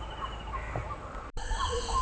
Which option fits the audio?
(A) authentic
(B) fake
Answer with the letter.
A